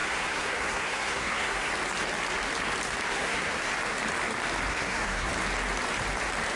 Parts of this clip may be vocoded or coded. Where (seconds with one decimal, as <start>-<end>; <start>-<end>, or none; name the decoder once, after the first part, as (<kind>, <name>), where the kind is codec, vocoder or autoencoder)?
0.0-1.7 (codec, SNAC); 3.1-3.7; 4.7-5.3